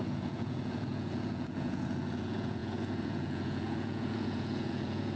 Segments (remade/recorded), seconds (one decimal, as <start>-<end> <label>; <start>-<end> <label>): 0.0-5.2 remade